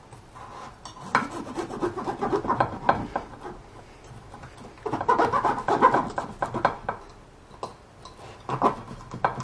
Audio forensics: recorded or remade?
recorded